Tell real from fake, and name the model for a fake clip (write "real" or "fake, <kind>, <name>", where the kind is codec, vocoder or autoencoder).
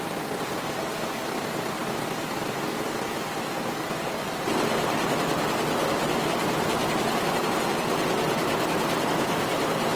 real